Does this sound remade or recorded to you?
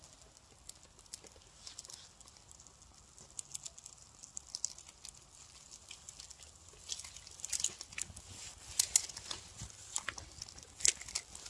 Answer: recorded